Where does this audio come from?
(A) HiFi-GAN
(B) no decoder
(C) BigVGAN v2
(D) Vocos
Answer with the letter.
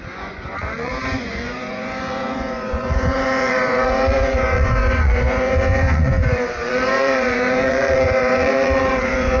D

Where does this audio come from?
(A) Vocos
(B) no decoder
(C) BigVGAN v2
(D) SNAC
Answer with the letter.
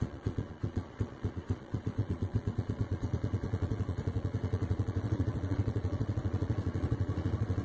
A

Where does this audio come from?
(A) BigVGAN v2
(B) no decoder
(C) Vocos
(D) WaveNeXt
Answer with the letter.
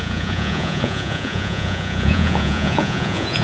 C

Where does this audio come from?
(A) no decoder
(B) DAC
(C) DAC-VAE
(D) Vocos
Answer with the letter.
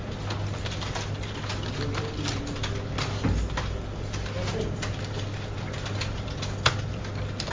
A